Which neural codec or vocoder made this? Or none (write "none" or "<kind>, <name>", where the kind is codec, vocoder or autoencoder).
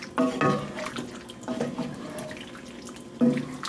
none